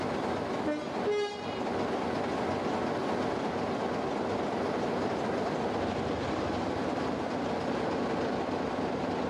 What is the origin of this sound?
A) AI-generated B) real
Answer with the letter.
B